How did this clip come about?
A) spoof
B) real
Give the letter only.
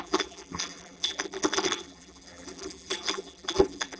A